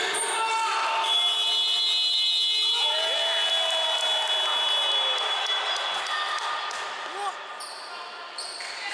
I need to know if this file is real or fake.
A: real